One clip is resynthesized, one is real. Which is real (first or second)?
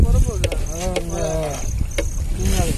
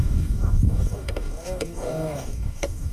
first